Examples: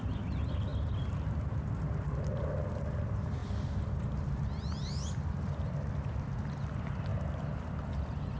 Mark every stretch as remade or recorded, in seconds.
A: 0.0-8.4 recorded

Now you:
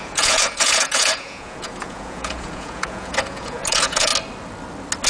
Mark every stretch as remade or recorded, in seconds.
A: 0.0-4.1 remade; 4.1-5.1 recorded

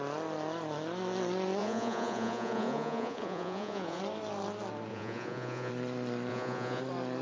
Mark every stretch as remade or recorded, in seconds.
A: 0.0-1.6 recorded; 1.6-4.0 remade; 4.0-4.9 recorded; 4.9-5.7 remade; 5.7-6.3 recorded; 6.3-6.8 remade; 6.8-7.2 recorded

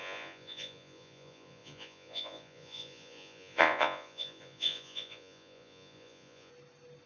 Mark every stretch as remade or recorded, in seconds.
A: 0.0-6.5 remade; 6.5-7.1 recorded